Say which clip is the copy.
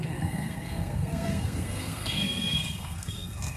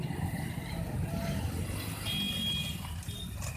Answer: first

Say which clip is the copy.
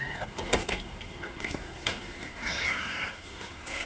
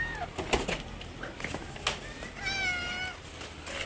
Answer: first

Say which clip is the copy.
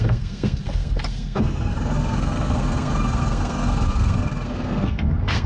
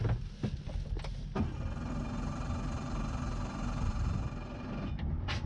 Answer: first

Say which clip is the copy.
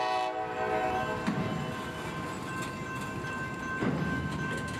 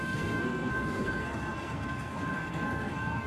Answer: second